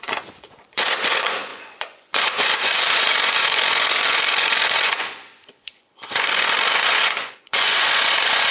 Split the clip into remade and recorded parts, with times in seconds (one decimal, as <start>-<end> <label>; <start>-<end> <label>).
0.0-8.5 remade